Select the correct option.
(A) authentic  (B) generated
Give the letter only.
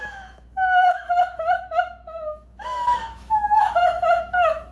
B